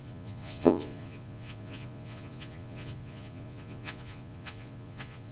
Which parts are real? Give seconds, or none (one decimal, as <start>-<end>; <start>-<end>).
none

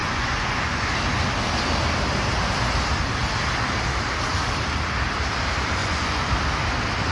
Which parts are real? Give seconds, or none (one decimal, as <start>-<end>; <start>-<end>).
0.9-5.8; 6.3-7.1